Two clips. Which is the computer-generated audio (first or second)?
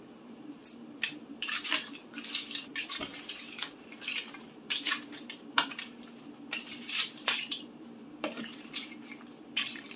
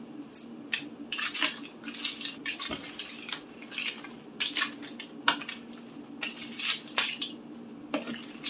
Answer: first